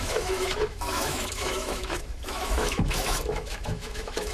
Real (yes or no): no